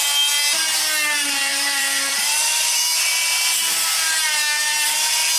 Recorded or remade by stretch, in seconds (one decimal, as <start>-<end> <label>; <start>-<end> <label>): 0.0-1.5 recorded; 1.5-3.1 remade; 3.1-5.4 recorded